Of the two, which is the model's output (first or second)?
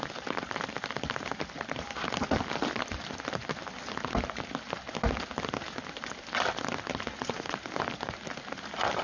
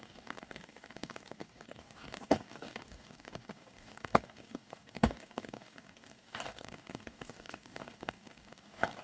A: second